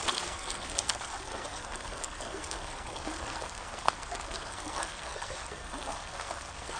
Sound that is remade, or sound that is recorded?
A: remade